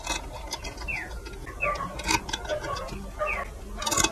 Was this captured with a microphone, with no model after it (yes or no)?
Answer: yes